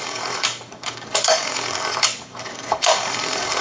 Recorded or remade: remade